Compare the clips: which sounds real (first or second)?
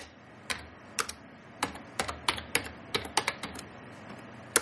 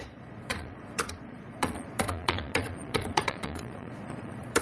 first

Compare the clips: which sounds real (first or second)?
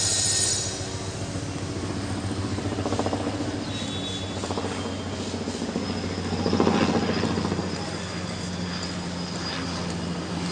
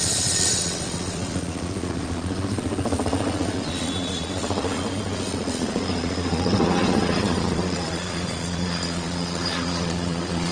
first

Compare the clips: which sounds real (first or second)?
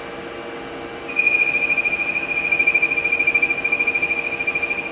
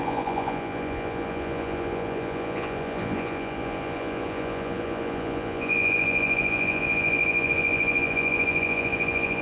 first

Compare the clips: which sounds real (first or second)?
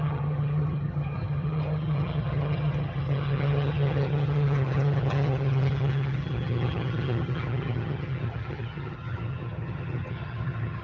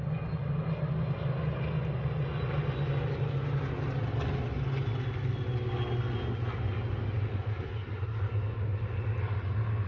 second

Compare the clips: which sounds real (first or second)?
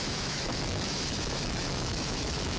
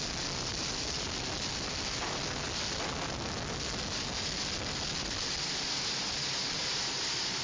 second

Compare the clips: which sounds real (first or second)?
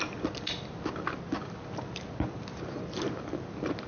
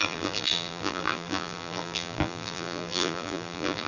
first